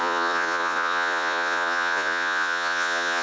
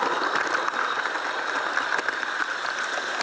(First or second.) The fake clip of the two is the first